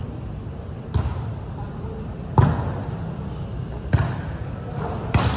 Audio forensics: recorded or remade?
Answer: recorded